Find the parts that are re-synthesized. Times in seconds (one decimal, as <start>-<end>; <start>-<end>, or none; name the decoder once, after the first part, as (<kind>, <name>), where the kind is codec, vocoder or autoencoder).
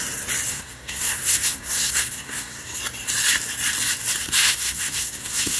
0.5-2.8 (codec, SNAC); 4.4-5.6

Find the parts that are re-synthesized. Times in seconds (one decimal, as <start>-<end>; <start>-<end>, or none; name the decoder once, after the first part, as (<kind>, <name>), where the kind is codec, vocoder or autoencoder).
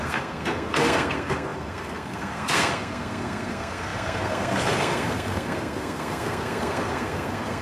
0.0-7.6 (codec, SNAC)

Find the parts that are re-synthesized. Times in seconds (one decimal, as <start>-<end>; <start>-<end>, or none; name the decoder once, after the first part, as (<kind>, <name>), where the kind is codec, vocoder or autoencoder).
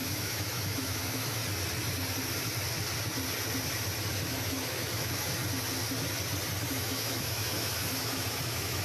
0.0-1.4 (autoencoder, DAC-VAE); 4.1-5.4; 6.7-8.8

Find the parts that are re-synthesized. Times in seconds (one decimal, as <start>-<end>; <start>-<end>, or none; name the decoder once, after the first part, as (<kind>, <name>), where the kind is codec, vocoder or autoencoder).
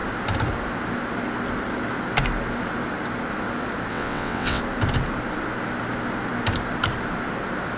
3.9-4.6 (vocoder, WaveNeXt)